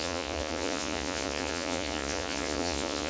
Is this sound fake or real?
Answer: fake